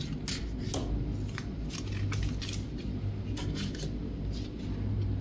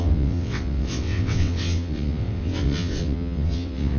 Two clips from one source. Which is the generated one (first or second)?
second